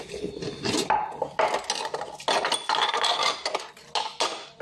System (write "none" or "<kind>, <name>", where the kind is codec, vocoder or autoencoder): none